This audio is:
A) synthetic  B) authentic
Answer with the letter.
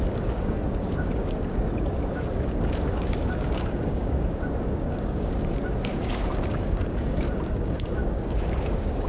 A